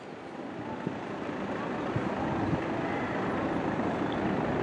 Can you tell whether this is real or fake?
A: real